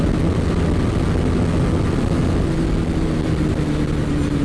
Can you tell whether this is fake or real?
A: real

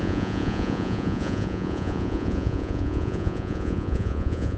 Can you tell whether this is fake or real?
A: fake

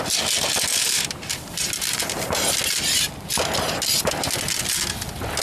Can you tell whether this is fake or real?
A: real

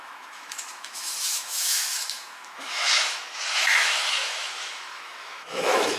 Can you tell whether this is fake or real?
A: fake